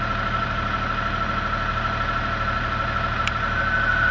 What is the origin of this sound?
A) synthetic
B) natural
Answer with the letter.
B